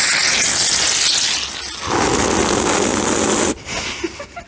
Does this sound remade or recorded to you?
recorded